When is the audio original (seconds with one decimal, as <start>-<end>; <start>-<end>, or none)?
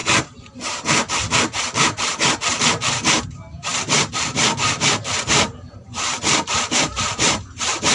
none